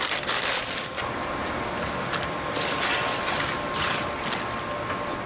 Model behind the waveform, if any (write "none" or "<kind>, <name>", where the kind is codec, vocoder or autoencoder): none